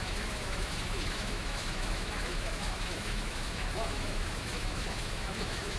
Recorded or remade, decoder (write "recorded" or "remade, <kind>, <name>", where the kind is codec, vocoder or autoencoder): remade, autoencoder, DAC-VAE